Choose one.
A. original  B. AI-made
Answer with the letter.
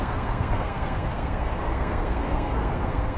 B